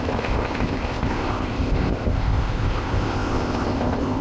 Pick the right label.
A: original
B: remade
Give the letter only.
B